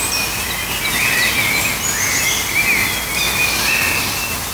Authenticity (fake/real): real